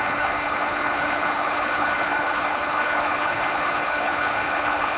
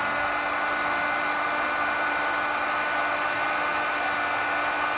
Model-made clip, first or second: first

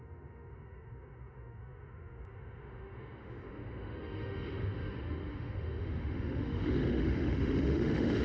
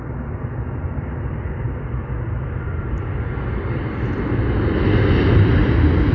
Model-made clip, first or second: first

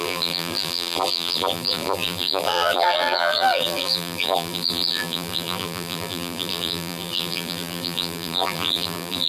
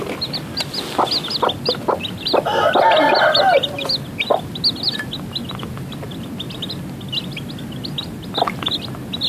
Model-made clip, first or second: first